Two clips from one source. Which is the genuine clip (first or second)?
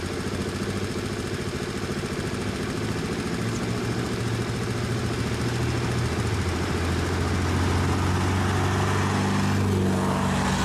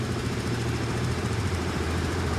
first